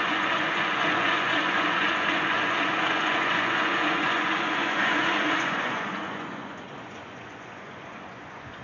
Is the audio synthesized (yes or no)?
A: yes